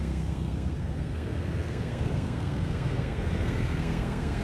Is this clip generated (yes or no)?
yes